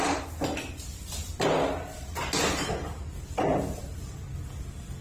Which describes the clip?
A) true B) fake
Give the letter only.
A